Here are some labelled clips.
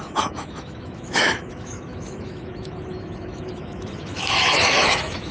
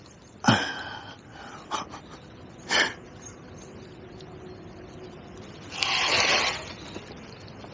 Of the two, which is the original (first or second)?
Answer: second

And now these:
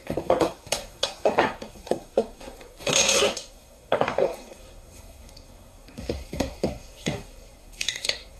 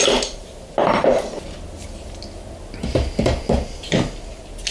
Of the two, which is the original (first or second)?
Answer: second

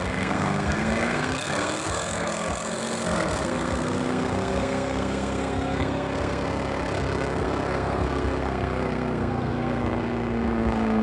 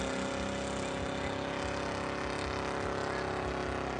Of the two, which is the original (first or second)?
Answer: second